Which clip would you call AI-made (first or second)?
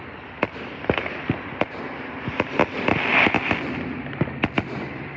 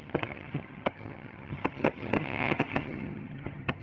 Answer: second